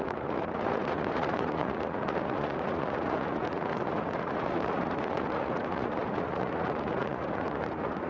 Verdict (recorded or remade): remade